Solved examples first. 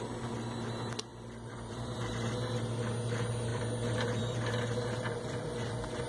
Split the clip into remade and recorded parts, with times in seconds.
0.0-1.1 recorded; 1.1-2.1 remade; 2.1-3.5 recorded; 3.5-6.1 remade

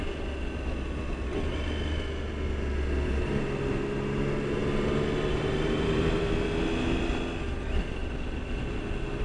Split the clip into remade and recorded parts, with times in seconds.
0.0-4.6 recorded; 4.6-6.5 remade; 6.5-9.2 recorded

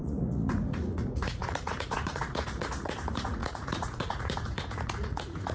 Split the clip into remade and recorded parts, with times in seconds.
0.0-5.5 remade

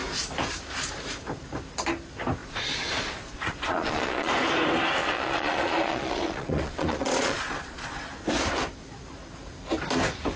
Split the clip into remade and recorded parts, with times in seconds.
0.0-2.4 recorded; 2.4-4.3 remade; 4.3-5.0 recorded; 5.0-8.1 remade; 8.1-10.4 recorded

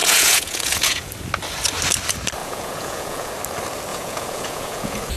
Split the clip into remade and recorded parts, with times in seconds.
0.0-1.1 remade; 1.1-2.4 recorded; 2.4-3.3 remade; 3.3-3.9 recorded; 3.9-5.2 remade

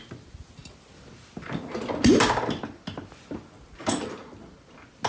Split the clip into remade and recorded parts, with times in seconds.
0.0-5.1 recorded